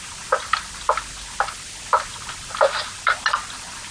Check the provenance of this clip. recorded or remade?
recorded